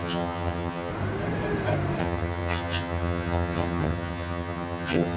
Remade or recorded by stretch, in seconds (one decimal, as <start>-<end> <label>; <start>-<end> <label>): 0.0-0.9 remade; 0.9-2.0 recorded; 2.0-5.2 remade